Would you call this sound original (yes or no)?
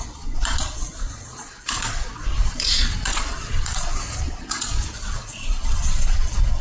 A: no